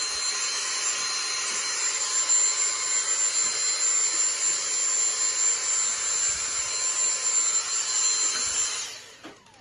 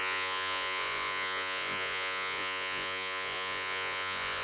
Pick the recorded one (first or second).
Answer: first